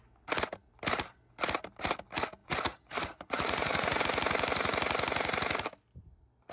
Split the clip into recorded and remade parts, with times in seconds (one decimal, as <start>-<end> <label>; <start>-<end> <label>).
0.0-2.4 recorded; 2.4-4.0 remade; 4.0-6.5 recorded